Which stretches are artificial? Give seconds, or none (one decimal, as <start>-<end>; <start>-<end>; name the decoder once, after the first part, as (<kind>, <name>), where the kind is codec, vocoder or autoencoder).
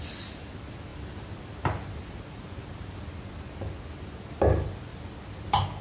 4.9-5.8 (vocoder, BigVGAN v2)